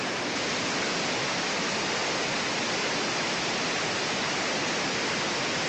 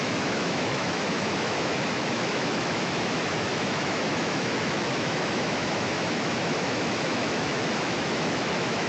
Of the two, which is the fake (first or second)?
second